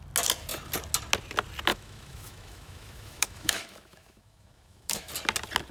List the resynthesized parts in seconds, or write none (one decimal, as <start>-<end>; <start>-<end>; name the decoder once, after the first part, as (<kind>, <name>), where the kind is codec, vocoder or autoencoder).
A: 1.7-5.1 (autoencoder, DAC-VAE)

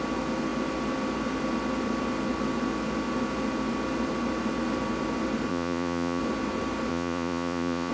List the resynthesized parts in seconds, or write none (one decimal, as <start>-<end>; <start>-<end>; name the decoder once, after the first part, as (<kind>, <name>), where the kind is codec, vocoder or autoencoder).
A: 5.5-6.2 (vocoder, Vocos); 6.9-7.9

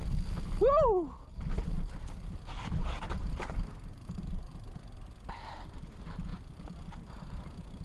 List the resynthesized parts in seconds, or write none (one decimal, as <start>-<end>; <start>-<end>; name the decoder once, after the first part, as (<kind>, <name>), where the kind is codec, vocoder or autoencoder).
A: 3.2-4.5 (vocoder, BigVGAN v2); 5.3-6.3; 7.1-7.8